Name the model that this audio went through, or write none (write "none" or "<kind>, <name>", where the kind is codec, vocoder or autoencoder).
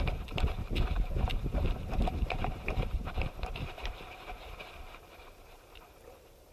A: vocoder, BigVGAN v2